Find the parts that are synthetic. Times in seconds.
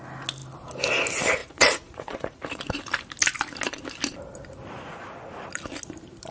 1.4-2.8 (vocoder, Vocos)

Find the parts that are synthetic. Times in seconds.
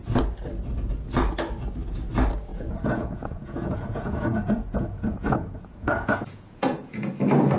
2.5-7.1 (vocoder, Vocos)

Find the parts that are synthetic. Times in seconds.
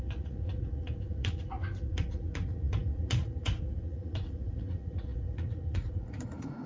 0.0-6.7 (vocoder, Vocos)